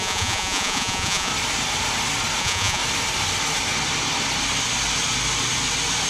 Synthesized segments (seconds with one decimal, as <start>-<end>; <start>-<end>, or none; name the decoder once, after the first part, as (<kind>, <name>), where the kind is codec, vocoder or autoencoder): 0.0-1.3 (vocoder, Vocos); 2.4-2.8